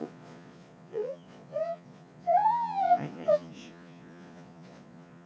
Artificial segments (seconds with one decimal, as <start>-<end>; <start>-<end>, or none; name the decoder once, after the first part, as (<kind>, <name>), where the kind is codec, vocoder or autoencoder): 0.0-5.3 (vocoder, Vocos)